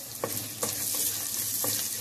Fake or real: real